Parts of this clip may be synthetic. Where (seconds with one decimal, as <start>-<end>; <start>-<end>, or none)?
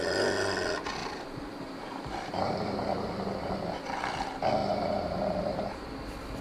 1.0-3.5; 4.6-5.9